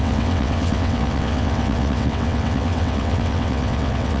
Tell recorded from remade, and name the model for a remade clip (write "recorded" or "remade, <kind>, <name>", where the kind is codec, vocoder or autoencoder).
remade, vocoder, WaveNeXt